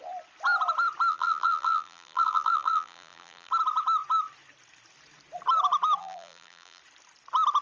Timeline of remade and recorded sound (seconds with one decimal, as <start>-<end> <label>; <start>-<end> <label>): 0.0-1.1 recorded; 1.1-3.5 remade; 3.5-6.0 recorded; 6.0-6.8 remade; 6.8-7.6 recorded